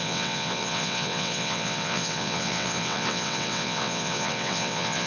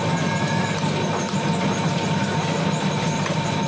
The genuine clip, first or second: second